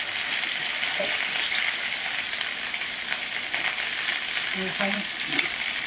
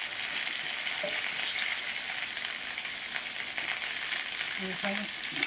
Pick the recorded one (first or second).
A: second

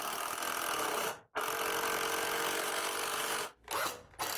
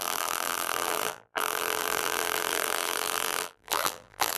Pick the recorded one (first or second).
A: first